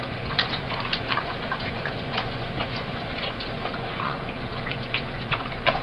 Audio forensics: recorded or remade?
remade